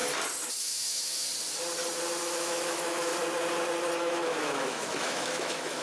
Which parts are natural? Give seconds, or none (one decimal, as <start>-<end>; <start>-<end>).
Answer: 0.0-0.6; 1.3-2.2; 3.1-4.0